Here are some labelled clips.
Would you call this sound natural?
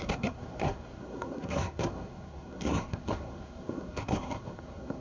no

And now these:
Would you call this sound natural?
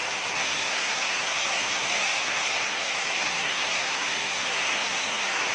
no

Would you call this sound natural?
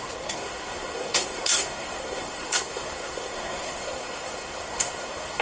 no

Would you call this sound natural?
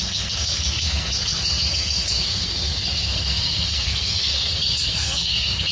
no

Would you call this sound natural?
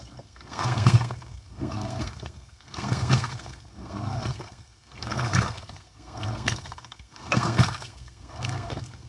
no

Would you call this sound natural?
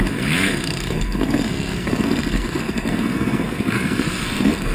no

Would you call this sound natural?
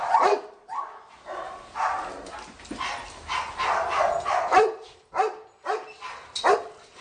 yes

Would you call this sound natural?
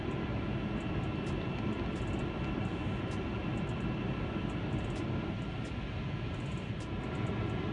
yes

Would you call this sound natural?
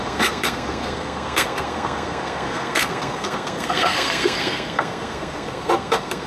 no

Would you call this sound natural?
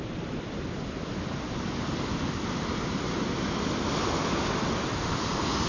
yes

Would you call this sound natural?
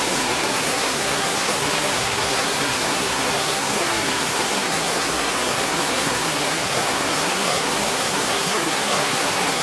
no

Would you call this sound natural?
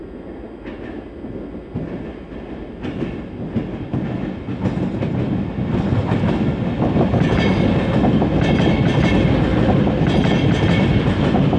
yes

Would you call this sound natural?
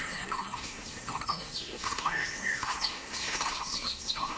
no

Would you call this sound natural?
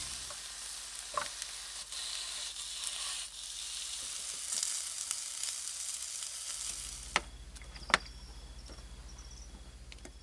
yes